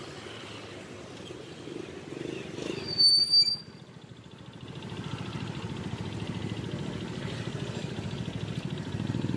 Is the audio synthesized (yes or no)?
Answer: no